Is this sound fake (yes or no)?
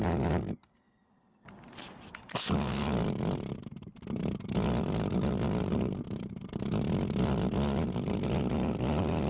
no